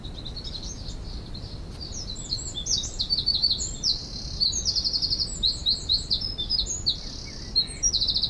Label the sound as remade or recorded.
recorded